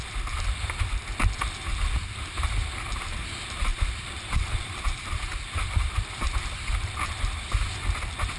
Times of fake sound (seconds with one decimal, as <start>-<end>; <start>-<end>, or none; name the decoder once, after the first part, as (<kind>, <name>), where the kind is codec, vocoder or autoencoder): 3.7-5.1 (vocoder, BigVGAN v2)